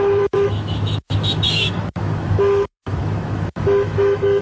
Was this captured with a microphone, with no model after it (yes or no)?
no